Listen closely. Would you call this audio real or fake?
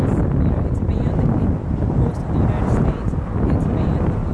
fake